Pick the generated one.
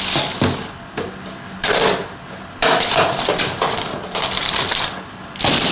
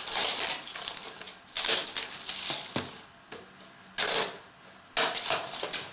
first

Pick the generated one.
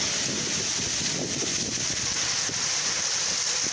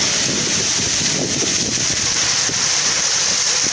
second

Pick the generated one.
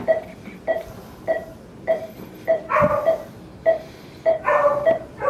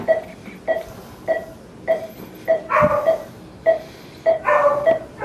first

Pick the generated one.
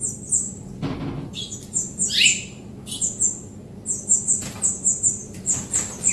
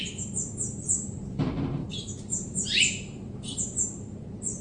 second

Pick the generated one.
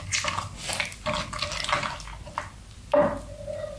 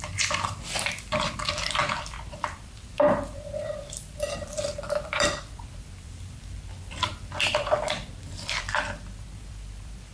second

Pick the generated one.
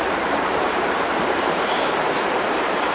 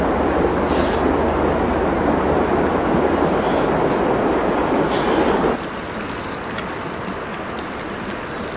first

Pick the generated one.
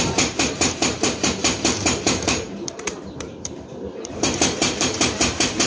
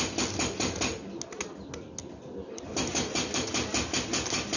first